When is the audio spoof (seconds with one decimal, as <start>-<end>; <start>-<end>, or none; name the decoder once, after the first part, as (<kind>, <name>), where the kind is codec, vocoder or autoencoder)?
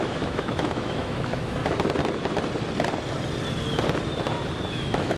0.0-1.6 (autoencoder, DAC-VAE); 4.7-5.2